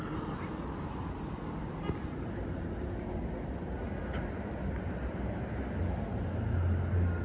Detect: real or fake real